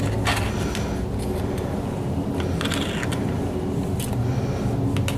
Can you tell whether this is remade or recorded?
recorded